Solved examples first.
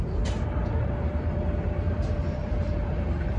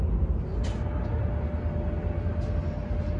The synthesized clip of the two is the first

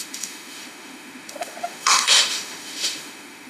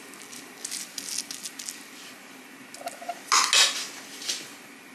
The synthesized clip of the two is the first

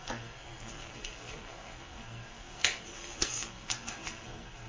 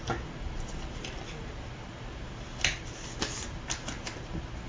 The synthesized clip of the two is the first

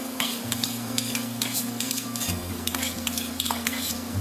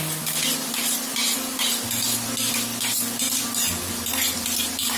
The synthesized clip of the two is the first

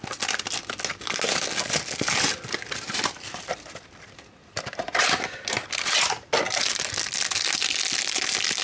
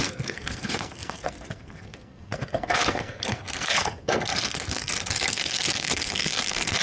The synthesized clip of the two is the second